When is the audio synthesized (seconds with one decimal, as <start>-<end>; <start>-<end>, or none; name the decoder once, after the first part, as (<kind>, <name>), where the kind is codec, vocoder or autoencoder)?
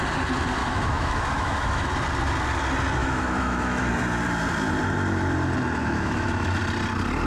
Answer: 0.6-1.9 (autoencoder, DAC-VAE); 3.0-3.9; 5.8-6.6